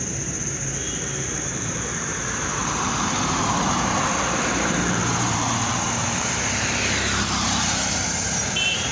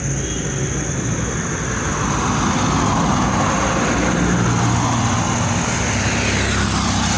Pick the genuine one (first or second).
second